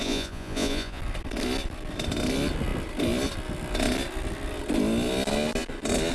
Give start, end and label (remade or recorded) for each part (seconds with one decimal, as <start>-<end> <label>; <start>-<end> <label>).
0.0-1.0 remade; 1.0-6.1 recorded